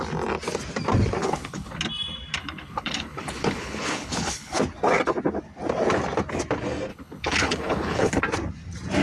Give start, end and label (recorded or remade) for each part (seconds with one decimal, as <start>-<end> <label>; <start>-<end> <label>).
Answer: 0.0-1.2 recorded; 1.2-1.8 remade; 1.8-2.4 recorded; 2.4-4.6 remade; 4.6-6.9 recorded; 6.9-8.2 remade; 8.2-9.0 recorded